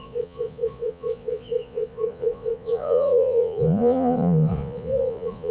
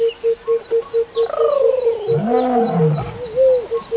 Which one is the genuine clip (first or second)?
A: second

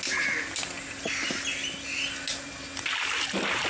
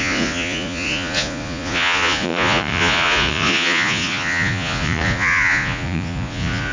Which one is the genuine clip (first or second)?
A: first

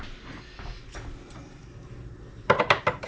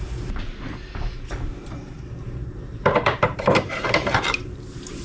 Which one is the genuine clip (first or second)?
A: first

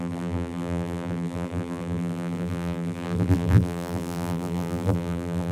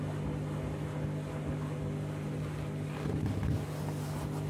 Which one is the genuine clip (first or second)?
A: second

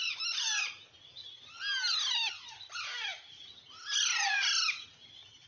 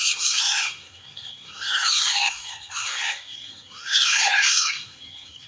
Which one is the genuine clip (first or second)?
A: first